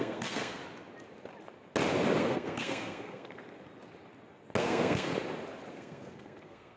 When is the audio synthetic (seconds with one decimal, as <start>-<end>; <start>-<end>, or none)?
0.0-0.6; 2.2-3.4; 4.6-5.1; 5.7-6.8